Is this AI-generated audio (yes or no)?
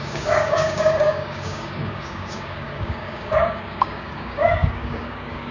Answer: yes